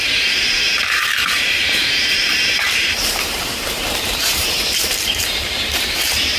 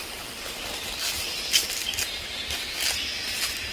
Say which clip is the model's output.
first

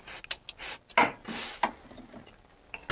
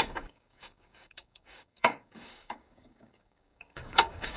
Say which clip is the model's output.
second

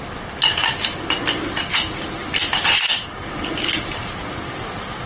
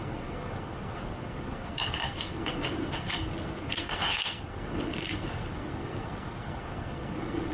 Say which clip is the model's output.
second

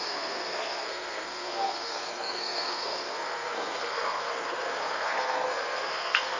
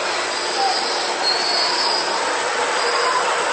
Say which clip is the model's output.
first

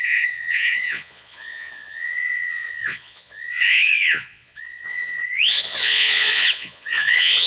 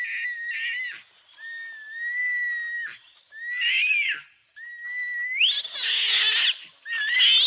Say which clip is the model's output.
first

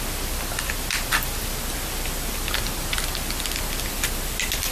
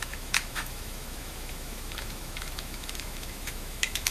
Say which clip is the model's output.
second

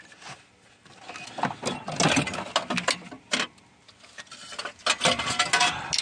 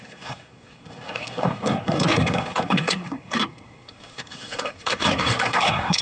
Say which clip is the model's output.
second